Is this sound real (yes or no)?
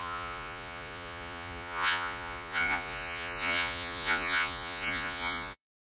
no